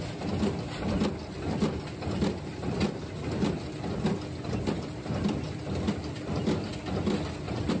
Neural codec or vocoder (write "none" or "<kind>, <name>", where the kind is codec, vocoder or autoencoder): none